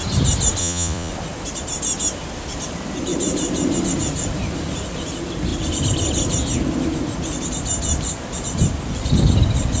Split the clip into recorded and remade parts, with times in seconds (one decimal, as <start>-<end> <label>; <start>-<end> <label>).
0.0-0.6 recorded; 0.6-1.1 remade; 1.1-9.8 recorded